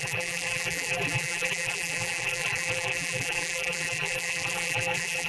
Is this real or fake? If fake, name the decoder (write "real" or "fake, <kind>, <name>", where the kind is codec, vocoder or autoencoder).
fake, vocoder, BigVGAN v2